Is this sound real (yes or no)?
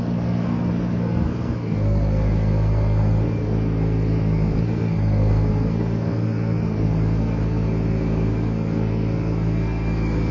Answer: no